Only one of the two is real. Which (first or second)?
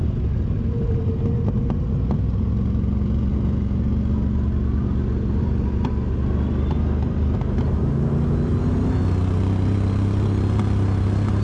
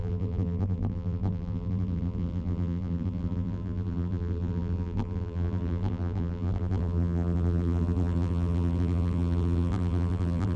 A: first